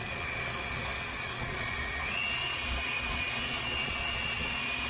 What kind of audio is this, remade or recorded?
remade